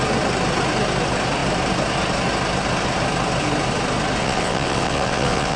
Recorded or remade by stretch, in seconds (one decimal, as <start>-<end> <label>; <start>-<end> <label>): 0.0-4.2 recorded; 4.2-5.6 remade

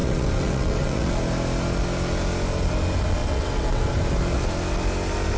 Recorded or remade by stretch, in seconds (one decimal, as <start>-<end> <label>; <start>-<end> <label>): 0.0-1.1 remade; 1.1-3.2 recorded; 3.2-3.9 remade; 3.9-5.4 recorded

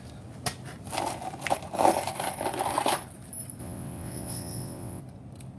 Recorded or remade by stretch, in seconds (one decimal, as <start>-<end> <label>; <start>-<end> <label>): 0.0-3.6 recorded; 3.6-5.0 remade; 5.0-5.6 recorded

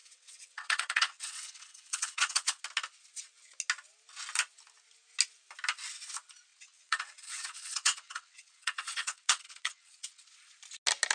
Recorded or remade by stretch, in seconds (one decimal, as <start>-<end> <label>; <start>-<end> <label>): 0.0-2.6 remade; 2.6-6.5 recorded; 6.5-10.2 remade; 10.2-11.1 recorded

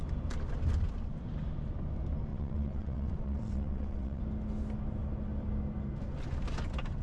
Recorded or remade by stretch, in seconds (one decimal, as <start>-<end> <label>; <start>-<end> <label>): 0.0-2.3 recorded; 2.3-4.2 remade; 4.2-7.0 recorded

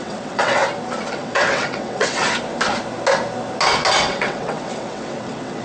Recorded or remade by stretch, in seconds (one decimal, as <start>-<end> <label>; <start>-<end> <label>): 0.0-0.6 remade; 0.6-1.1 recorded; 1.1-2.2 remade; 2.2-4.0 recorded; 4.0-5.6 remade

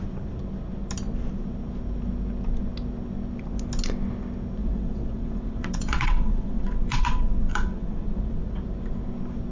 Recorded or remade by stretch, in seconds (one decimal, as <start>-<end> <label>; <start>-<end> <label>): 0.0-4.6 recorded; 4.6-8.6 remade; 8.6-9.5 recorded